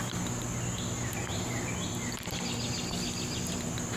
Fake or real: real